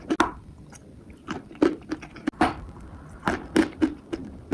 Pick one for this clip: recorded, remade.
recorded